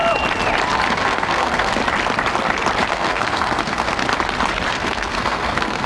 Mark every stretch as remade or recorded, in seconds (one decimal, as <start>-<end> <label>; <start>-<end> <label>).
0.0-0.9 recorded; 0.9-1.8 remade; 1.8-2.9 recorded; 2.9-4.0 remade; 4.0-4.7 recorded; 4.7-5.9 remade